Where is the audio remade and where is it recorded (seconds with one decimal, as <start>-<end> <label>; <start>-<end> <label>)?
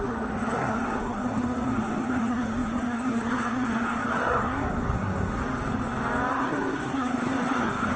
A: 0.0-5.4 remade; 5.4-6.3 recorded; 6.3-8.0 remade